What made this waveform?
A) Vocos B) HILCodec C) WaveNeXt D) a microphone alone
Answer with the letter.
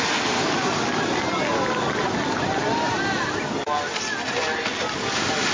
D